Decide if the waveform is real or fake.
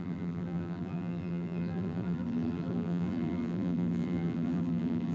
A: fake